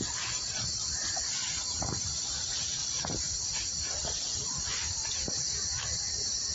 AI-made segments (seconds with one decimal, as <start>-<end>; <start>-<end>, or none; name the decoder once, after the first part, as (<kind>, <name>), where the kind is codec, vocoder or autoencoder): 2.8-3.3 (vocoder, BigVGAN v2)